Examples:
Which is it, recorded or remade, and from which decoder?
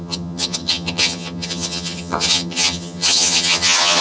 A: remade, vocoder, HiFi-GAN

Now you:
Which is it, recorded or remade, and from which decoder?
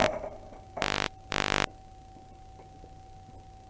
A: recorded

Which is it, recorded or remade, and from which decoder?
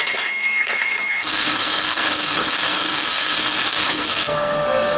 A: remade, codec, SNAC